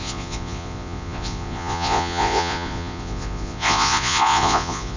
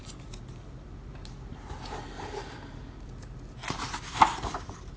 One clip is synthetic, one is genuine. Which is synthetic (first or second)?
first